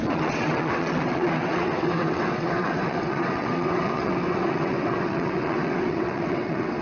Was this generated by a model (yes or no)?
yes